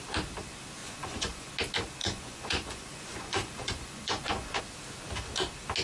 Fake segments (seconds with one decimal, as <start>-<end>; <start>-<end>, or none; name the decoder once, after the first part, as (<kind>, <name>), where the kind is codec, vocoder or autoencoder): 0.8-1.5 (vocoder, Vocos); 2.0-4.6